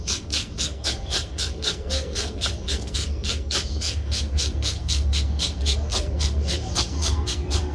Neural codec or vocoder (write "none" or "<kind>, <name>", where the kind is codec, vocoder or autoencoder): codec, SNAC